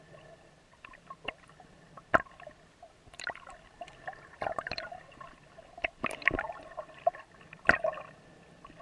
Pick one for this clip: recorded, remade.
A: recorded